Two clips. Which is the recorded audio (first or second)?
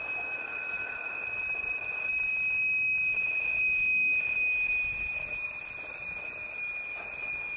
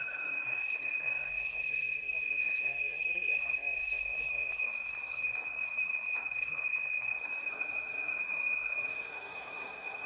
first